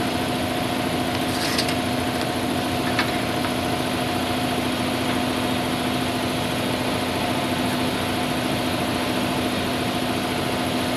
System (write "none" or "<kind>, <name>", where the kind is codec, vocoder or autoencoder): none